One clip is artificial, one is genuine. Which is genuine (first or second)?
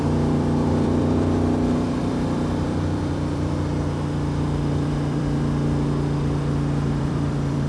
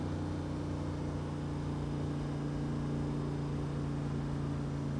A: second